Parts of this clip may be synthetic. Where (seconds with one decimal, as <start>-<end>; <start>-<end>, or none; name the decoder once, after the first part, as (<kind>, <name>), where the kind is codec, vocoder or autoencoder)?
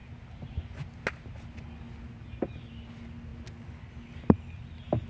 none